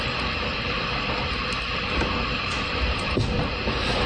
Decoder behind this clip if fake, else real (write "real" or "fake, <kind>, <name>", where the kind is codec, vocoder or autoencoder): real